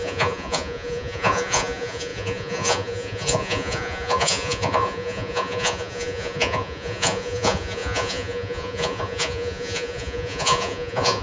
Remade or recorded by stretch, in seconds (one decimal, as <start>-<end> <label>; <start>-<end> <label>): 0.0-11.2 remade